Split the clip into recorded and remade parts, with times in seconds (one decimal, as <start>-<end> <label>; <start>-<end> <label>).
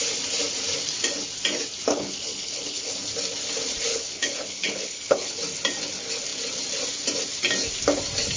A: 0.0-1.9 recorded; 1.9-2.9 remade; 2.9-3.9 recorded; 3.9-5.4 remade; 5.4-8.4 recorded